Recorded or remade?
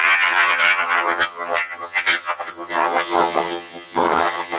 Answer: remade